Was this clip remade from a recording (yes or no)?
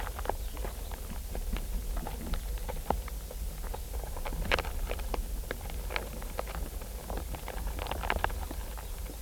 no